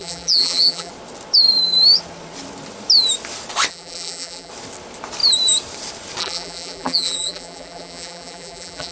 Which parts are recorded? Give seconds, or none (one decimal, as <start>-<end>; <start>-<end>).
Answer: 0.9-3.7; 4.5-6.2